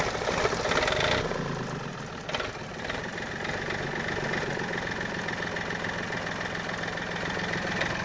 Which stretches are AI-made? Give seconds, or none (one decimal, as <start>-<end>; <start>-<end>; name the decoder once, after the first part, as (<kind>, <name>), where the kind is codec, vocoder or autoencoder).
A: none